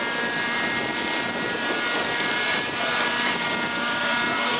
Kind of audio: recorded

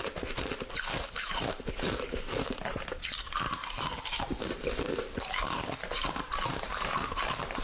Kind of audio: remade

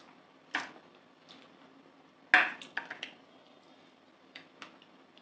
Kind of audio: recorded